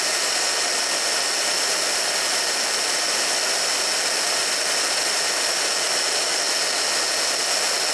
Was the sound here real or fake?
real